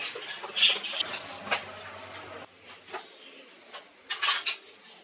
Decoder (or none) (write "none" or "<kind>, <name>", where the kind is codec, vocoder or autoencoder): none